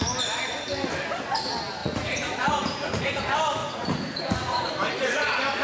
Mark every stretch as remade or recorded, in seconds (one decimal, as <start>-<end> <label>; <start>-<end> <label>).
0.0-1.8 recorded; 1.8-3.2 remade; 3.2-3.6 recorded; 3.6-4.7 remade; 4.7-5.6 recorded